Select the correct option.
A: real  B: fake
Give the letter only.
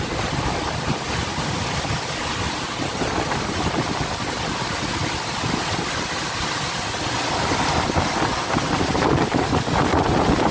A